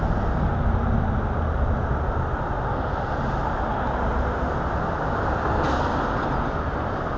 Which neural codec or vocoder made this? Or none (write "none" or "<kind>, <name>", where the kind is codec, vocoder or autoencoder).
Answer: none